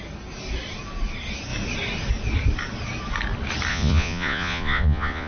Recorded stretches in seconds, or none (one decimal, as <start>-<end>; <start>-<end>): 0.0-3.7